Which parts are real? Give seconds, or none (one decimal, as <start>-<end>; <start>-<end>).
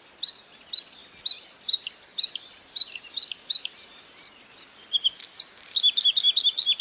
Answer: 0.0-6.8